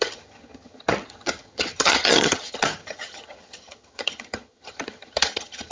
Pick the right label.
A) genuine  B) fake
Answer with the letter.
B